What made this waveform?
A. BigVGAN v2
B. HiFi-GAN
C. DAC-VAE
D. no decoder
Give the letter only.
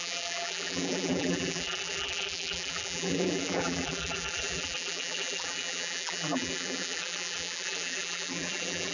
A